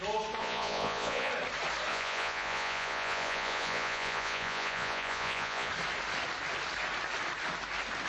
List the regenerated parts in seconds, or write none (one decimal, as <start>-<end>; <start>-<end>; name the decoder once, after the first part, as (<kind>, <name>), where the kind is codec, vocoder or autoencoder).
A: 0.4-1.3 (vocoder, Vocos); 1.9-5.7